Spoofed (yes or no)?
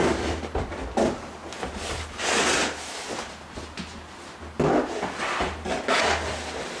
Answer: no